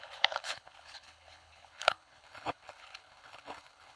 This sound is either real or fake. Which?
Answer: fake